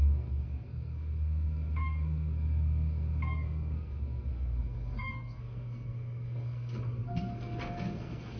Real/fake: fake